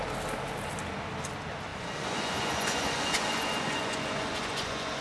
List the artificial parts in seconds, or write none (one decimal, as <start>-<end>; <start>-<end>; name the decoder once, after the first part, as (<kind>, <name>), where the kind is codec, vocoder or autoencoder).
1.7-5.0 (vocoder, Vocos)